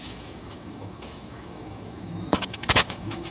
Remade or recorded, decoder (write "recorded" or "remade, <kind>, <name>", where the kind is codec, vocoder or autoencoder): remade, autoencoder, DAC-VAE